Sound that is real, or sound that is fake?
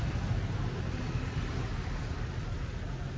real